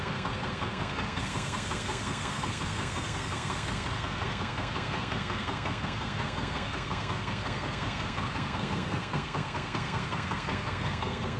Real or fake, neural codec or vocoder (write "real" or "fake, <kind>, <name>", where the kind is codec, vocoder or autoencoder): fake, codec, SNAC